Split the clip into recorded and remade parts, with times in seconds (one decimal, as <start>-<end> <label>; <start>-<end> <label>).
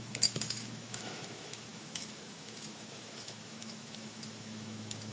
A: 0.0-5.1 remade